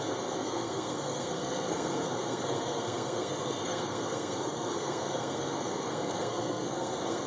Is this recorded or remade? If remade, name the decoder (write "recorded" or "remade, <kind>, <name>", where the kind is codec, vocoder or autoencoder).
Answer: remade, codec, SNAC